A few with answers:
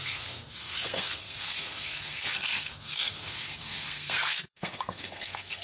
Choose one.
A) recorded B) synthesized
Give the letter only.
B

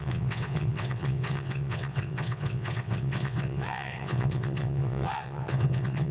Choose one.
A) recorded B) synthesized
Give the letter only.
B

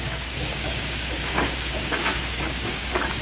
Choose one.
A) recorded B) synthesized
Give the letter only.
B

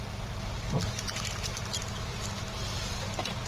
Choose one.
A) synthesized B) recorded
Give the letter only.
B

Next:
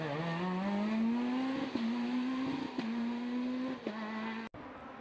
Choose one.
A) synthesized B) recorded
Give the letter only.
B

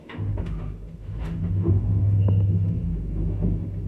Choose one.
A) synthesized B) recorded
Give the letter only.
A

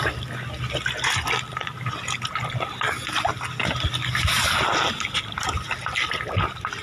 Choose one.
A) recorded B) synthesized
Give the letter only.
A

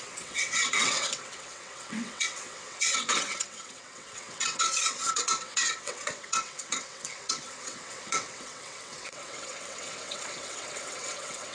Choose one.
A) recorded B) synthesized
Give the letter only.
B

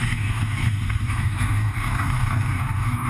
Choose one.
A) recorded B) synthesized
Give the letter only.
B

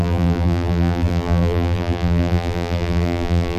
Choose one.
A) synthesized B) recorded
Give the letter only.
A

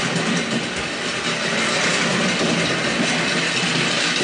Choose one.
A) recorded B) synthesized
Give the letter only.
A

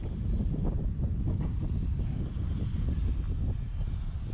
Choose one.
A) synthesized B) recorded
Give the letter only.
B